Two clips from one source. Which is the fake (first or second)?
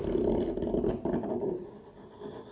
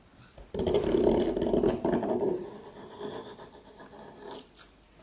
second